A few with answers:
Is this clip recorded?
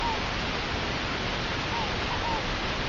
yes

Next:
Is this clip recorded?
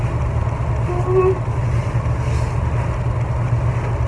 yes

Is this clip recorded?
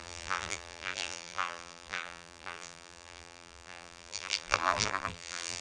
no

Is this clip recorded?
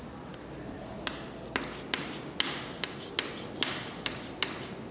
yes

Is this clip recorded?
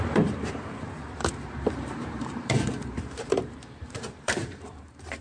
no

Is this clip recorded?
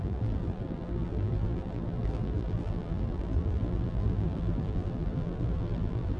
no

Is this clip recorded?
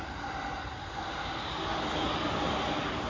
yes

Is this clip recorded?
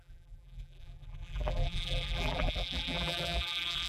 no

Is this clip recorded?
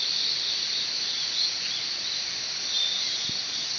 yes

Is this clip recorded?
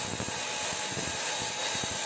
yes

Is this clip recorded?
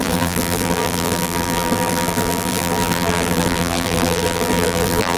no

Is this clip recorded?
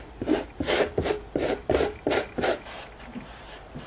no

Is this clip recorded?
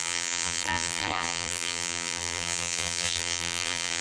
no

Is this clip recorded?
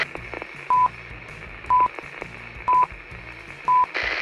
yes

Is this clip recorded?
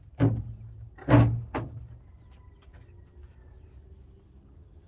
yes